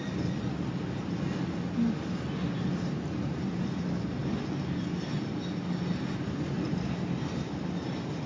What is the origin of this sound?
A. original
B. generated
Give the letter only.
A